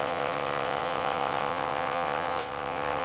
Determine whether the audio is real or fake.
fake